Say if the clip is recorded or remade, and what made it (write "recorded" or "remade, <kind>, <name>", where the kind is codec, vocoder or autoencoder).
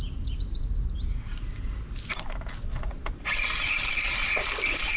recorded